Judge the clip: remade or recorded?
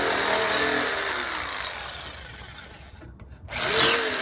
recorded